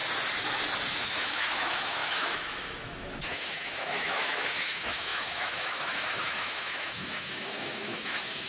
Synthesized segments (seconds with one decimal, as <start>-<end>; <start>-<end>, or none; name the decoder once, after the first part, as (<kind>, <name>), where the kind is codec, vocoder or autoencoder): 1.0-8.5 (autoencoder, DAC-VAE)